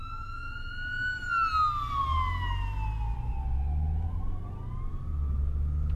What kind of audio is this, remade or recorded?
recorded